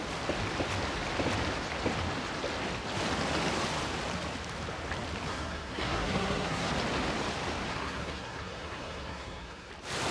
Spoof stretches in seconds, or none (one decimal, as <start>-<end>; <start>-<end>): 5.3-6.7; 7.7-9.7